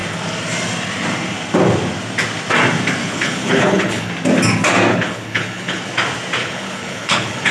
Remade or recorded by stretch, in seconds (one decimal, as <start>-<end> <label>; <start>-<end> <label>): 0.0-3.0 recorded; 3.0-4.1 remade; 4.1-4.9 recorded; 4.9-5.8 remade; 5.8-6.4 recorded; 6.4-7.5 remade